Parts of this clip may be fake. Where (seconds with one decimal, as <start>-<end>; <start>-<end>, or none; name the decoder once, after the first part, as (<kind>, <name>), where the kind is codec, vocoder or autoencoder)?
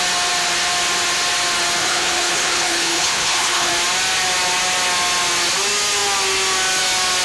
1.8-3.7 (codec, HILCodec)